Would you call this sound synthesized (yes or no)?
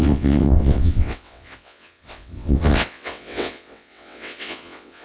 yes